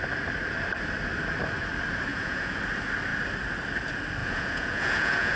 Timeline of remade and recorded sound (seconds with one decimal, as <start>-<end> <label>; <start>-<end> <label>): 0.0-2.1 recorded; 2.1-2.6 remade; 2.6-4.2 recorded; 4.2-5.4 remade